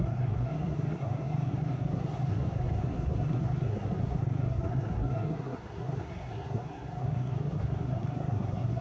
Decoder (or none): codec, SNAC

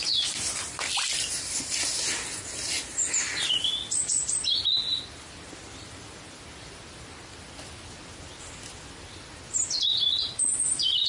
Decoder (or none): none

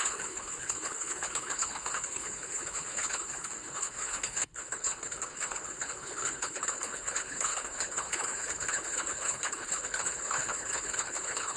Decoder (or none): codec, HILCodec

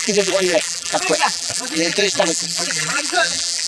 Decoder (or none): vocoder, BigVGAN v2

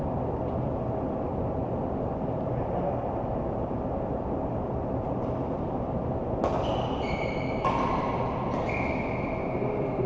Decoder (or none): none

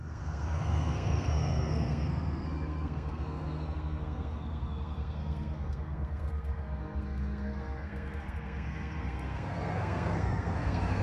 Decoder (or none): codec, SNAC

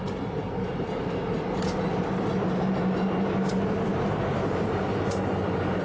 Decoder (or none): vocoder, BigVGAN v2